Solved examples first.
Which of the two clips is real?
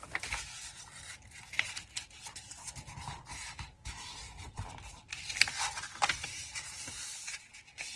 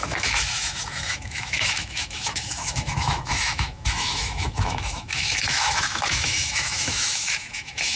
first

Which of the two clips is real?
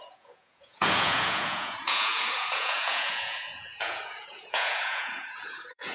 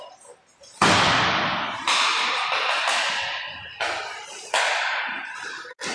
second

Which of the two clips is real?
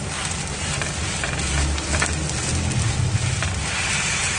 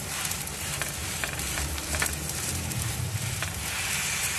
first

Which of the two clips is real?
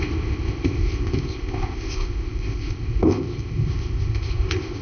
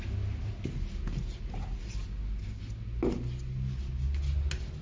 second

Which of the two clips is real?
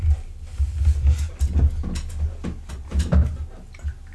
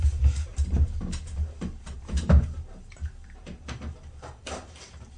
first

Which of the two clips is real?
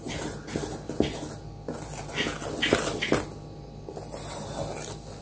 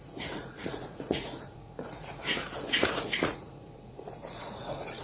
first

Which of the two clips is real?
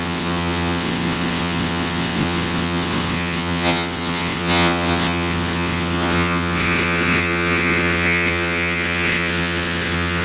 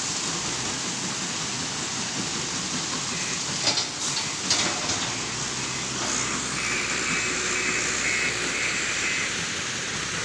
second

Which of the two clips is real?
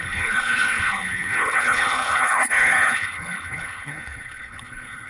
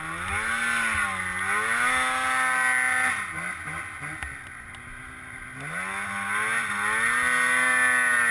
second